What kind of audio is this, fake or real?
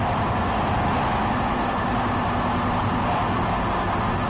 real